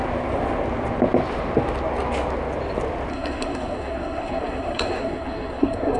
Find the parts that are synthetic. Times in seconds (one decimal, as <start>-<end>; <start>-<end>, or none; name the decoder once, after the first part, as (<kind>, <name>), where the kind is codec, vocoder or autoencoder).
3.1-6.0 (codec, SNAC)